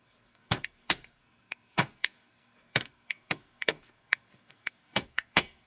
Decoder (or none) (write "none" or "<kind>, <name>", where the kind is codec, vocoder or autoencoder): codec, SNAC